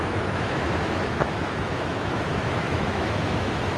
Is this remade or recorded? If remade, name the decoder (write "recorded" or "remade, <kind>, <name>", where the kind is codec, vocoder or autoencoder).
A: remade, autoencoder, DAC-VAE